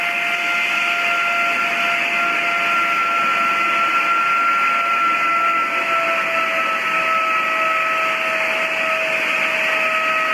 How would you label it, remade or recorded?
recorded